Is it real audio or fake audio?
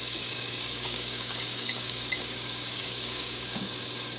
fake